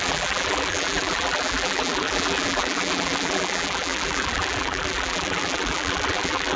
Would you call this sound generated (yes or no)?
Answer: yes